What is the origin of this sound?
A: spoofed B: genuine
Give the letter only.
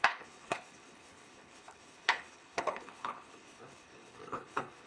A